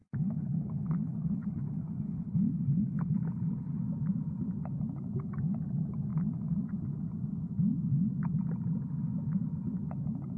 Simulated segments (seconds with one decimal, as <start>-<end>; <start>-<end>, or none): 0.0-3.8